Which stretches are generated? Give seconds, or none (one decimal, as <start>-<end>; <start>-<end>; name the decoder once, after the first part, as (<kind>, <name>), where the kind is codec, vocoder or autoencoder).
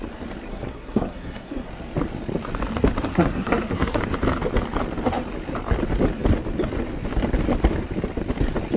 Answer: 0.5-1.7 (codec, SNAC); 3.1-4.0